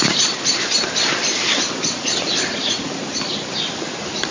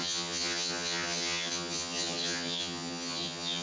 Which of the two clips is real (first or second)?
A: first